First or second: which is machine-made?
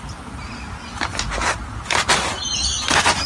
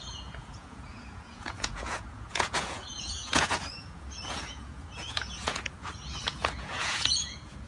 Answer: second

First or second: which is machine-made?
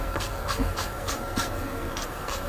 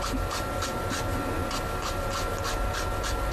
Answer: first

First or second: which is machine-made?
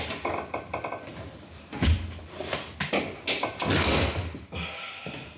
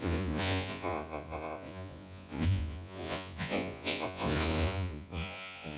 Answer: second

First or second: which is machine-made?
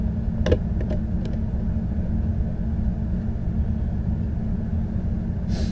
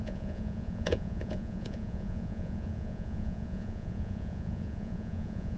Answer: second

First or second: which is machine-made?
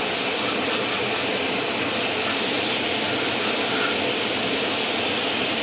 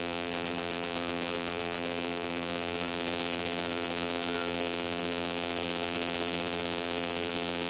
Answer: second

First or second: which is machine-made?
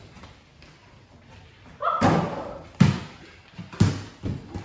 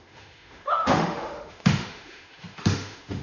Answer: second